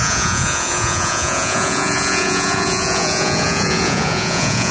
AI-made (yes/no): yes